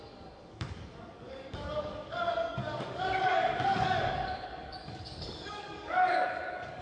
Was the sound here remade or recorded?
remade